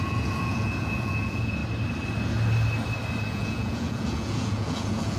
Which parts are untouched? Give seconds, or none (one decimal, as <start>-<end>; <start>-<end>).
1.6-3.2